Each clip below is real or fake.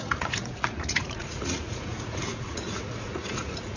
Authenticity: fake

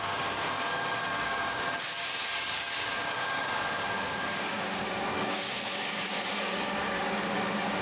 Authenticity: fake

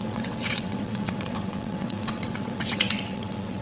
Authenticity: fake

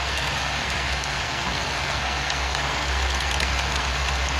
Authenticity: fake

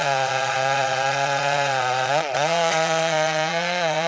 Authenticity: fake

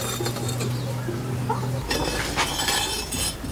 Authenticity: real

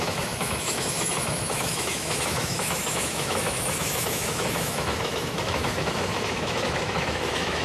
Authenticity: fake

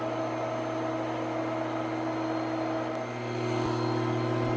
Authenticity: real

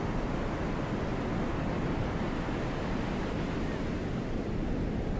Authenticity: real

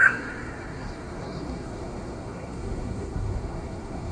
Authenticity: fake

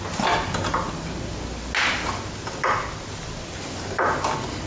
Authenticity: real